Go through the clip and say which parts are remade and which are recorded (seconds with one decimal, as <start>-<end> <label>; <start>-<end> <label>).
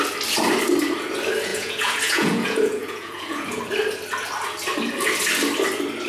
0.0-1.5 recorded; 1.5-3.6 remade; 3.6-6.1 recorded